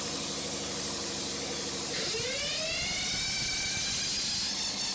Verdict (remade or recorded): recorded